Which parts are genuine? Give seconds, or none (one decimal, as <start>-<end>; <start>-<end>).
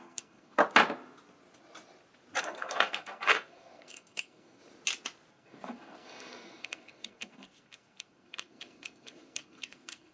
0.6-2.4; 4.6-5.3